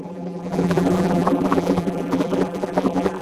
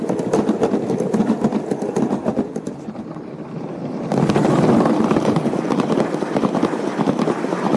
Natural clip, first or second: second